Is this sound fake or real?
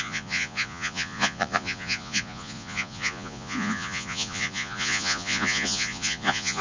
fake